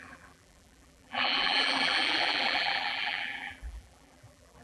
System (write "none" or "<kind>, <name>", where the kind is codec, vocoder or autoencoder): vocoder, BigVGAN v2